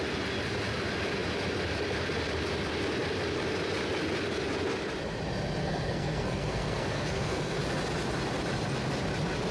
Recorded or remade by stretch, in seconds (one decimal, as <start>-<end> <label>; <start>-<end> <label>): 0.0-5.6 recorded; 5.6-7.6 remade; 7.6-9.5 recorded